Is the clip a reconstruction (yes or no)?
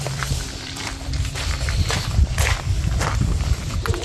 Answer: yes